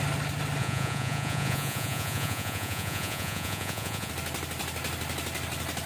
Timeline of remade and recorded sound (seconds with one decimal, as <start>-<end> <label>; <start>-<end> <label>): 0.0-0.6 recorded; 0.6-4.1 remade; 4.1-5.9 recorded